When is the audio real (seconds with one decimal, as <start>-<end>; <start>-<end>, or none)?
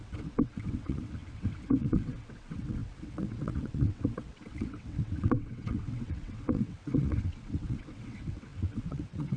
none